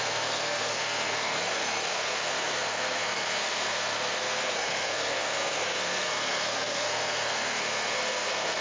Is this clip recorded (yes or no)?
no